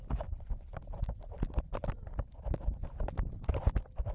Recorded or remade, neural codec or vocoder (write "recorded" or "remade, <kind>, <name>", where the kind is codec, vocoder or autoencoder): recorded